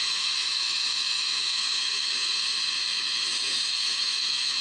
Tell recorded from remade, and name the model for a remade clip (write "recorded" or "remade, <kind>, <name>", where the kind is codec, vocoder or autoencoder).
remade, autoencoder, DAC-VAE